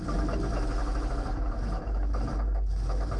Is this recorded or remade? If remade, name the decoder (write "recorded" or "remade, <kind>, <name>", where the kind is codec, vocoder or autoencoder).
remade, autoencoder, DAC-VAE